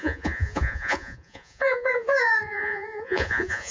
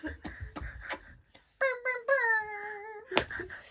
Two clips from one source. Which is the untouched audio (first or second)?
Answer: second